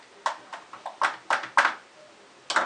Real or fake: real